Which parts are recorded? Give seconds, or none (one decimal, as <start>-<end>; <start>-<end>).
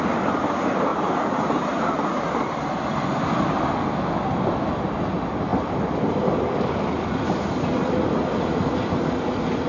0.0-5.5; 7.1-9.7